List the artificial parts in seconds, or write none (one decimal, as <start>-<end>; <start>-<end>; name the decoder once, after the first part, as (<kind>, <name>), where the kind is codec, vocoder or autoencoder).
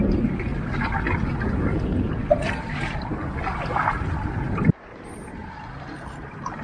0.0-0.5 (vocoder, BigVGAN v2); 4.5-5.4